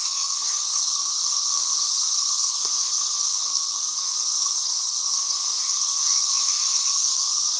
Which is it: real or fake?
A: fake